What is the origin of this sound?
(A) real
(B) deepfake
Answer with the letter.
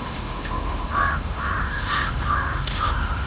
B